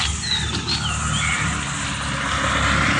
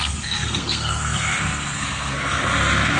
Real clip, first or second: first